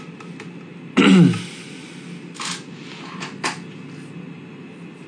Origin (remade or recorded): recorded